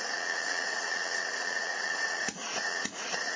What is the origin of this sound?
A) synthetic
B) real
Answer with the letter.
A